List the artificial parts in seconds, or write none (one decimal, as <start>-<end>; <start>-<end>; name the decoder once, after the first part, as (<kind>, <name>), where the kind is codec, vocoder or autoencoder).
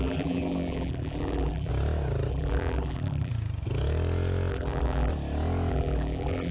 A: 0.0-1.7 (vocoder, BigVGAN v2); 2.3-3.3; 4.5-5.1; 5.7-6.5